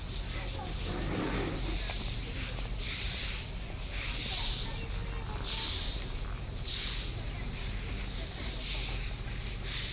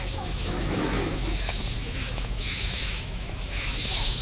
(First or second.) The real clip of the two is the first